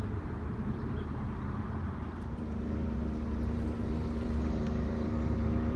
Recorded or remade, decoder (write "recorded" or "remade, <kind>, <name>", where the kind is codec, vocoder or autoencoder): remade, vocoder, BigVGAN v2